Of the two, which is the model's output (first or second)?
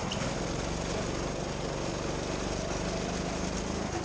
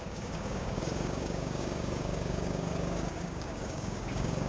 second